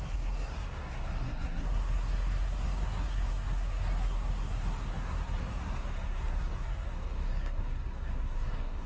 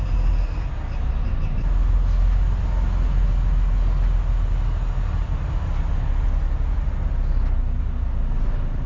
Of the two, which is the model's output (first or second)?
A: first